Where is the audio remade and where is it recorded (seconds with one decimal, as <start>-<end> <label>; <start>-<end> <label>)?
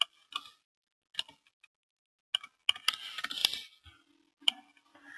0.0-5.2 recorded